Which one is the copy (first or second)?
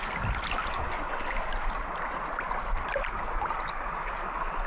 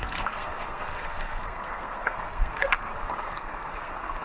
second